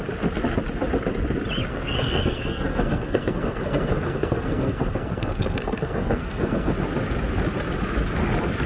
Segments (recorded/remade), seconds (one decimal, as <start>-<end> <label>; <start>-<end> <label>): 0.0-1.7 recorded; 1.7-6.7 remade; 6.7-8.7 recorded